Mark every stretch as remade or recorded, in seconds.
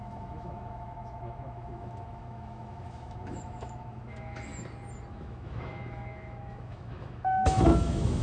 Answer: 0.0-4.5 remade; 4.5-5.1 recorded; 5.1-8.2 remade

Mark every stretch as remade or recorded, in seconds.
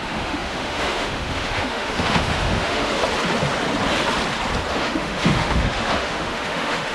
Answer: 0.0-3.0 remade; 3.0-4.7 recorded; 4.7-6.9 remade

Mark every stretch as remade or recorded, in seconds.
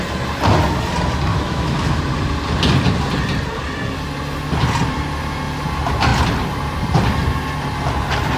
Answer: 0.0-1.3 recorded; 1.3-2.0 remade; 2.0-8.4 recorded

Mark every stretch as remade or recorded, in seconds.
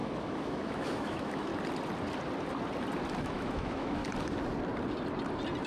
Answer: 0.0-1.5 remade; 1.5-3.2 recorded; 3.2-4.0 remade; 4.0-5.7 recorded